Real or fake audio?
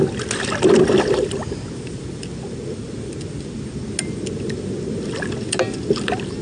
real